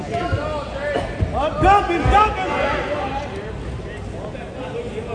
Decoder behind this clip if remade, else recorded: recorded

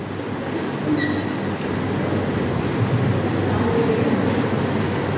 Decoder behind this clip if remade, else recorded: recorded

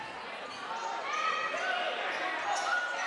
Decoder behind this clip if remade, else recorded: recorded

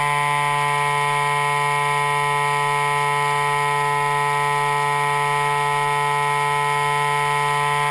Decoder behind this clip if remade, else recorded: recorded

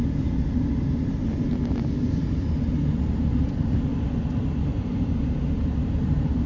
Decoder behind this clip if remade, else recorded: recorded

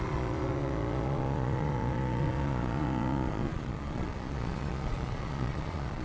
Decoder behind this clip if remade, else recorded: remade, vocoder, Vocos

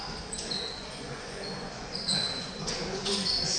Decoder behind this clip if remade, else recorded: remade, vocoder, Vocos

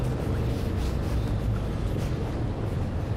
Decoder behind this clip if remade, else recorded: recorded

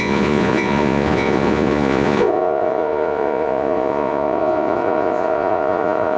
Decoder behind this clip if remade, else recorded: remade, vocoder, Vocos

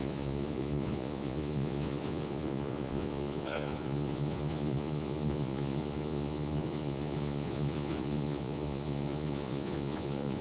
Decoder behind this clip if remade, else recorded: remade, vocoder, Vocos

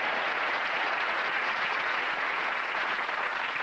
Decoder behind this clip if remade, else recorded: remade, vocoder, Vocos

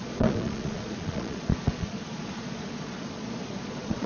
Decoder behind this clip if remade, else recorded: remade, vocoder, Vocos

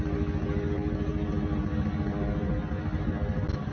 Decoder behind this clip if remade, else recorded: recorded